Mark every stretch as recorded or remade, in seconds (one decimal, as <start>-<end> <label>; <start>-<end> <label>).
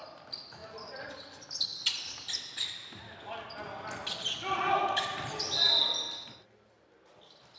0.0-0.6 recorded; 0.6-1.1 remade; 1.1-7.6 recorded